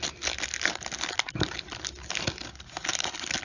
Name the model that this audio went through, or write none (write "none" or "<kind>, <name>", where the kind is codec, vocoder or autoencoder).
none